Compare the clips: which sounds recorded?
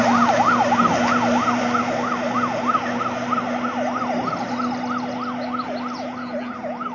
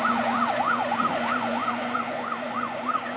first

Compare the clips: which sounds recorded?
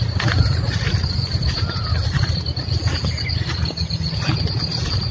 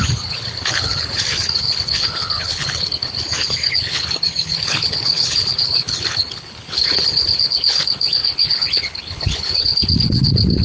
first